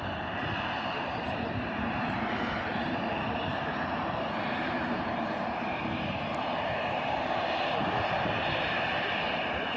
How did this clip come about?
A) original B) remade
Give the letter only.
B